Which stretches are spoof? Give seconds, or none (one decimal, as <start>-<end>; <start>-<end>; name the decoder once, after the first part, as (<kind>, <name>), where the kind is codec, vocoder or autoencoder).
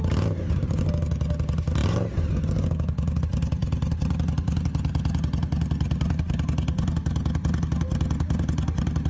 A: none